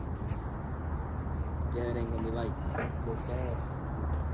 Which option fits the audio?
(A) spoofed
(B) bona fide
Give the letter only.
B